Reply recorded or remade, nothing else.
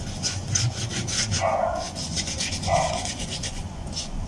remade